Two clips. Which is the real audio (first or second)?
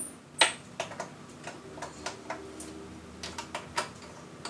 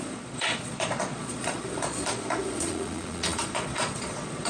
first